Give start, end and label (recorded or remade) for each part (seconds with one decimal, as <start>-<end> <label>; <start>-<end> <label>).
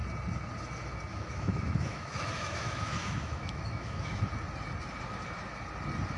0.0-1.1 recorded; 1.1-4.2 remade; 4.2-6.2 recorded